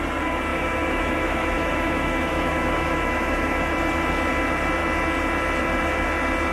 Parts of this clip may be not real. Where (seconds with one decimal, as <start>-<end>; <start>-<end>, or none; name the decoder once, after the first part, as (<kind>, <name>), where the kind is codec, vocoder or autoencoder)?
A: 0.5-3.6 (autoencoder, DAC-VAE)